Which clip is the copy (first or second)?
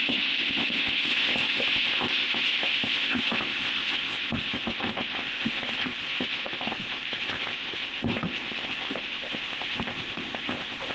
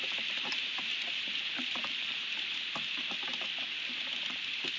first